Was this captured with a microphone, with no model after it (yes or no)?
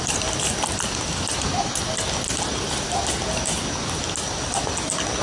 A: yes